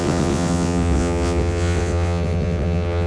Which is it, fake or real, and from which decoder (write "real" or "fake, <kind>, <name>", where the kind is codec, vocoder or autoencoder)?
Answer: fake, vocoder, WaveNeXt